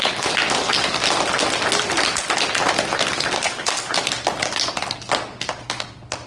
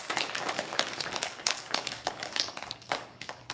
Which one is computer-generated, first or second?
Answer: second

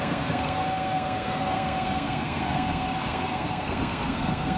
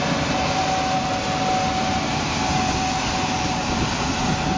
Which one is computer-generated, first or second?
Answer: first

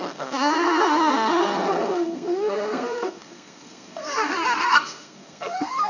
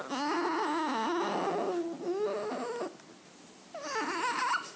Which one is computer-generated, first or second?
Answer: first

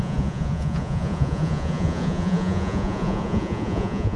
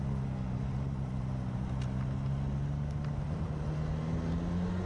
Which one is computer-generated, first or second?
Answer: first